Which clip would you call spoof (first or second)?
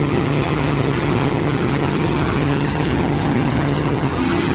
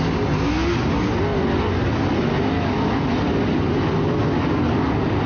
first